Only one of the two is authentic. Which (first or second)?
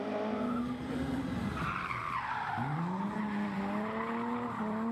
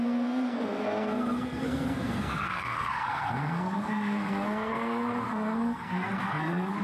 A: first